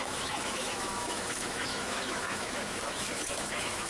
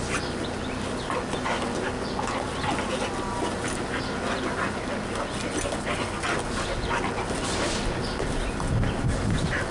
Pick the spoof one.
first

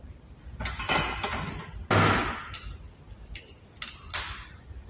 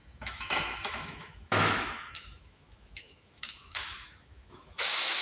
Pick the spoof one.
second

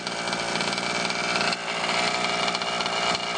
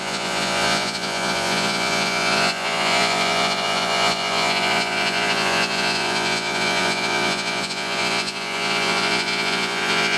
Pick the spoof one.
second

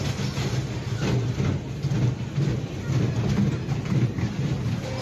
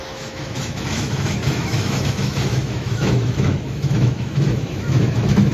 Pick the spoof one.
second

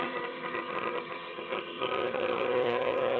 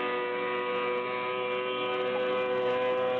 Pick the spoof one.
first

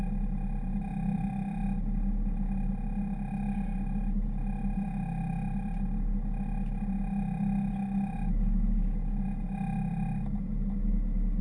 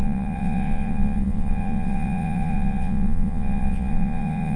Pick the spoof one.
second